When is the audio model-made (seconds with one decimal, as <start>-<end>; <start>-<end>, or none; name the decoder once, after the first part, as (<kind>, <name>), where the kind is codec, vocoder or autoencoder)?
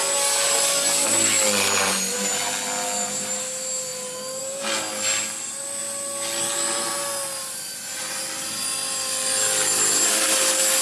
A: none